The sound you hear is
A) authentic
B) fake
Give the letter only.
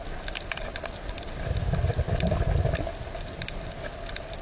A